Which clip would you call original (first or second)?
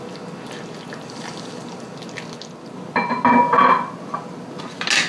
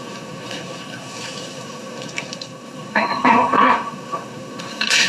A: first